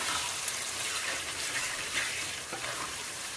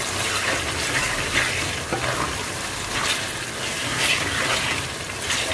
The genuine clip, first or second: second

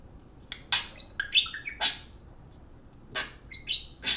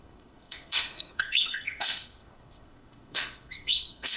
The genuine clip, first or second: first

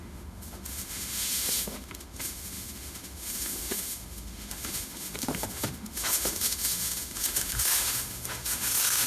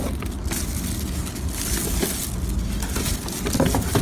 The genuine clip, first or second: second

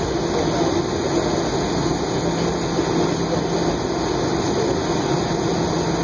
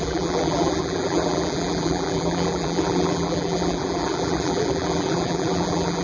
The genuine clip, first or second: first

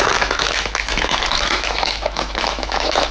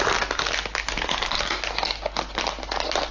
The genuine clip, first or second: second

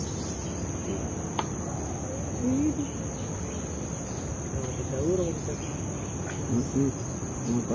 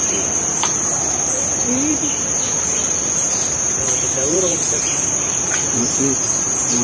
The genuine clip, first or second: first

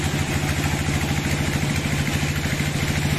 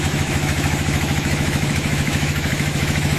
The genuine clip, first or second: first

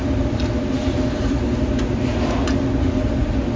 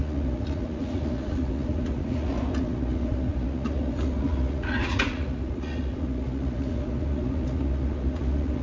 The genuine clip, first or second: first